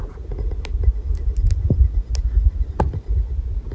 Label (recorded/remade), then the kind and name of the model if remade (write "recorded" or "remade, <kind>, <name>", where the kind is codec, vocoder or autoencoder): recorded